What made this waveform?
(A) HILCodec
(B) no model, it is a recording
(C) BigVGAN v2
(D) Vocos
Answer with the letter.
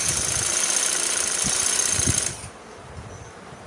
B